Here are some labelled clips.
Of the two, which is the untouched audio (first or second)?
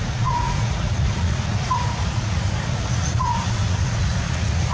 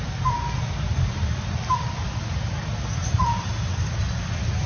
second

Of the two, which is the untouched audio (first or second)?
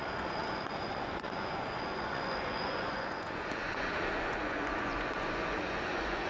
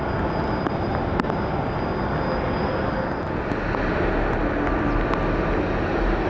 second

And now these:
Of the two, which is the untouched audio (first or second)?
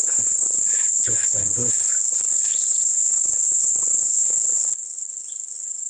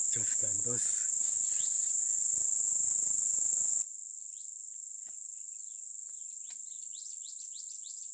second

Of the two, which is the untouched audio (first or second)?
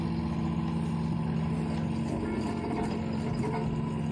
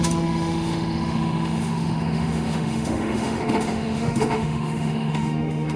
first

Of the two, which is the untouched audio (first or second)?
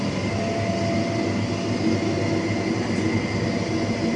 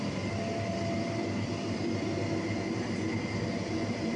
first